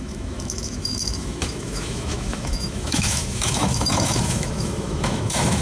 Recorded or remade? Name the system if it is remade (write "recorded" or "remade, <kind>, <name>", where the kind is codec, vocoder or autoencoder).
remade, autoencoder, DAC-VAE